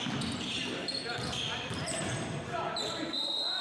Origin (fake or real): fake